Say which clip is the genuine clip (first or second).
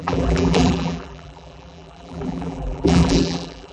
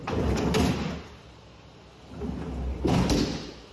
second